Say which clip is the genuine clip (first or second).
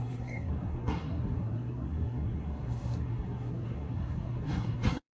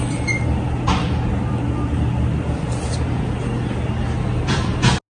second